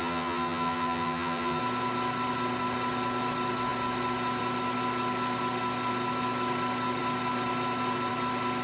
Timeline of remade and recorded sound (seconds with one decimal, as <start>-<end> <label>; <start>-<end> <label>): 0.0-1.6 remade; 1.6-8.6 recorded